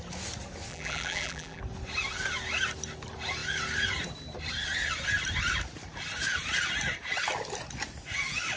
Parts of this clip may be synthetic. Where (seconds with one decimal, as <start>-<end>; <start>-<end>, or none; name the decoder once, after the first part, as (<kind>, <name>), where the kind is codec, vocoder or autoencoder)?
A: 0.7-1.6 (vocoder, BigVGAN v2)